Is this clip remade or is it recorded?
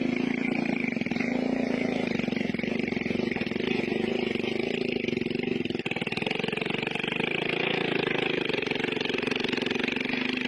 recorded